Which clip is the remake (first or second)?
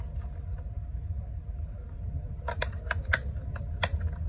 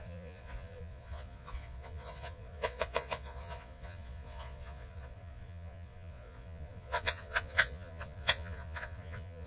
second